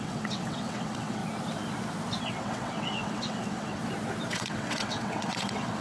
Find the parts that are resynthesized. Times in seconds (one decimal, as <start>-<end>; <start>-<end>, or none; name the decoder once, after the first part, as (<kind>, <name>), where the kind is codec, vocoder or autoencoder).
0.0-1.2 (vocoder, WaveNeXt); 2.2-3.8; 4.3-5.8